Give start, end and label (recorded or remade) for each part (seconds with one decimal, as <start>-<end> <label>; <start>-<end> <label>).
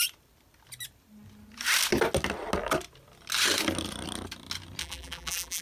0.0-4.8 recorded; 4.8-5.6 remade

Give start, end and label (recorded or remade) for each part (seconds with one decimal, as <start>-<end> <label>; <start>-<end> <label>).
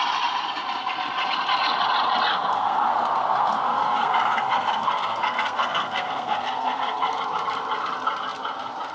0.0-2.3 recorded; 2.3-7.2 remade; 7.2-8.9 recorded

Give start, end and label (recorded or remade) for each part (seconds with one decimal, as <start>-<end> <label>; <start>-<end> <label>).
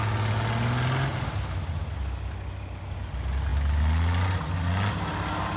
0.0-5.6 recorded